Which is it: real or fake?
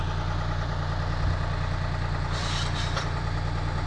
fake